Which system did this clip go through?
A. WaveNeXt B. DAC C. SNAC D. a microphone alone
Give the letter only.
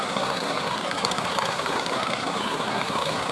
C